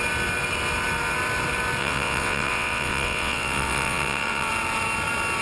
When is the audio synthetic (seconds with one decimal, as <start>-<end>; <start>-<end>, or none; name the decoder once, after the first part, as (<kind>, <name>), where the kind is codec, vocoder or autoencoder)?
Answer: 1.8-4.5 (vocoder, WaveNeXt)